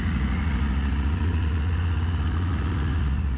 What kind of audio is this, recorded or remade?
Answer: remade